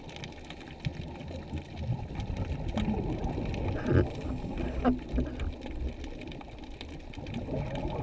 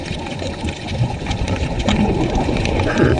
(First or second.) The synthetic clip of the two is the second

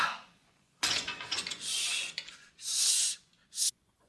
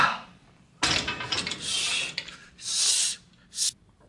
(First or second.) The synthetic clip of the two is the first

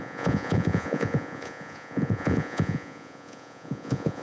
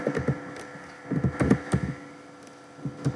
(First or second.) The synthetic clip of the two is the first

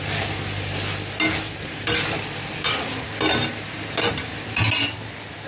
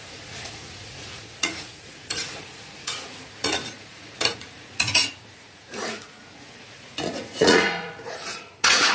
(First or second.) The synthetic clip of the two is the second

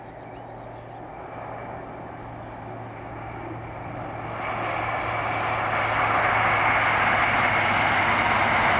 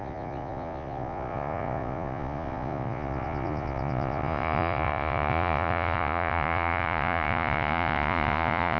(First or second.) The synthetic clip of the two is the second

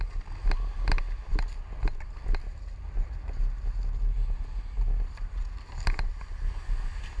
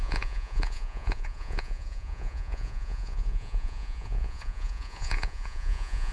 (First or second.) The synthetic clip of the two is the second